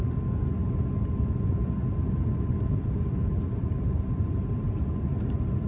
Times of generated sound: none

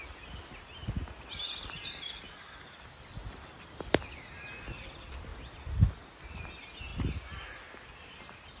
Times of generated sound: none

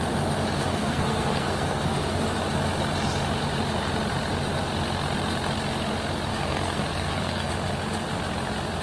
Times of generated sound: 0.7-2.2 (codec, SNAC); 6.3-7.5

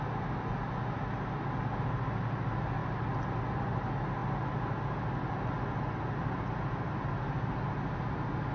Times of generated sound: none